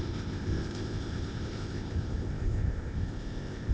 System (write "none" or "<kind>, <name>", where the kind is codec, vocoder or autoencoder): codec, ZipCodec